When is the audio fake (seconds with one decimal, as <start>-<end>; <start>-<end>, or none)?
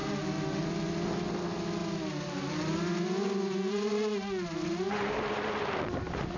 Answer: none